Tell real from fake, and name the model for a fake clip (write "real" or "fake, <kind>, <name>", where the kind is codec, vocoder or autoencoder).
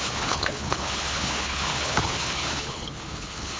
fake, codec, HILCodec